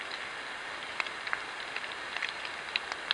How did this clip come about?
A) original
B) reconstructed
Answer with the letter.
A